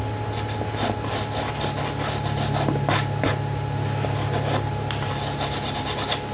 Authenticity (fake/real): real